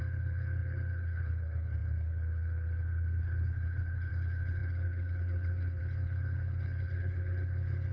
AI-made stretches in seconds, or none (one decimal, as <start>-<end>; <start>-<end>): 0.0-7.9